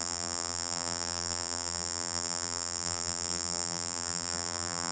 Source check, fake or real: fake